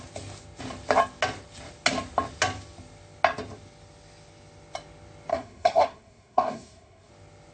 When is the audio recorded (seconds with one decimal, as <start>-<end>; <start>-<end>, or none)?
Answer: 0.0-5.3; 7.1-7.5